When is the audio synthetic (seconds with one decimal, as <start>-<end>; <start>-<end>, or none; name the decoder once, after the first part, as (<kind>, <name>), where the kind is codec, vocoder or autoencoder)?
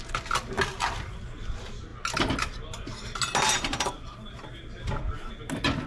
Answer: none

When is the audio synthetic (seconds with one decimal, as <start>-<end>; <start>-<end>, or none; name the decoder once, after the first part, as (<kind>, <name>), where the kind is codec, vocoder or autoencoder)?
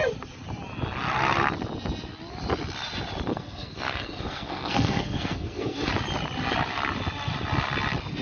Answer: 3.3-5.9 (codec, SNAC)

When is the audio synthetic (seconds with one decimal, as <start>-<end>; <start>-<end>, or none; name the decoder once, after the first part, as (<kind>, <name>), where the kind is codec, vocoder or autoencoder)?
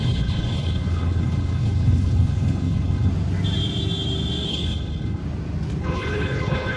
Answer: 0.0-3.1 (codec, HILCodec); 4.5-5.2; 5.8-6.8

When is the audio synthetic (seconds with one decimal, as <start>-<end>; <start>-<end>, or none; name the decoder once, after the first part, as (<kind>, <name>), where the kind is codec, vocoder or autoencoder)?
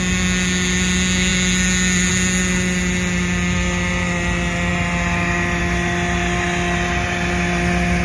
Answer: none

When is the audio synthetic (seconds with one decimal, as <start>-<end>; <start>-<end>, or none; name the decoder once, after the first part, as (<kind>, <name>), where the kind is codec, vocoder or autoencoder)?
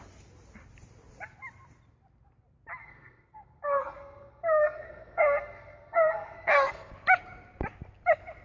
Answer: 2.8-6.9 (codec, SNAC)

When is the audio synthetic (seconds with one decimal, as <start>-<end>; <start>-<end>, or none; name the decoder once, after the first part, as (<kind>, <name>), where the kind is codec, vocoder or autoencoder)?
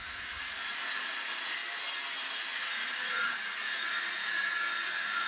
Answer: 0.0-1.6 (vocoder, Vocos); 2.2-5.3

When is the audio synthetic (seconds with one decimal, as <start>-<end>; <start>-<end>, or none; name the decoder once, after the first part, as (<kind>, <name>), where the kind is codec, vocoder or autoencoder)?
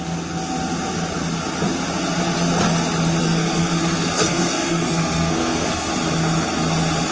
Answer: 3.2-5.9 (codec, SNAC)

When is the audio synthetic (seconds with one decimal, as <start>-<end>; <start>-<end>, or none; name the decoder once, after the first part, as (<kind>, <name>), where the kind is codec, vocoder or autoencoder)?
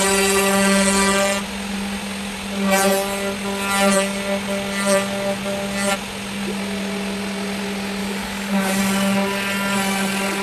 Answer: 8.0-8.8 (codec, DAC)